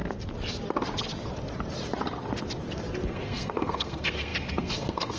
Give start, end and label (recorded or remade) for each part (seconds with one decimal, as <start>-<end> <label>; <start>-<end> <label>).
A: 0.0-3.1 recorded; 3.1-5.2 remade